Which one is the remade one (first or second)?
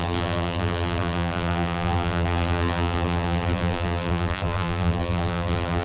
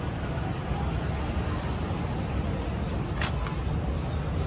first